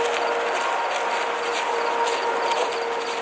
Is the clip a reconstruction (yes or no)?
no